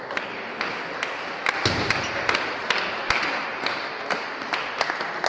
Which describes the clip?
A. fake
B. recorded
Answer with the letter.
B